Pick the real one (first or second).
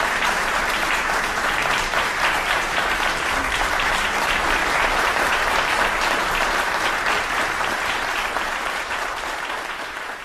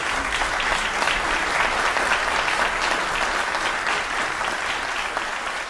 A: second